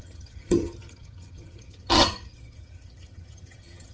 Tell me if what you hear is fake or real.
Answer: fake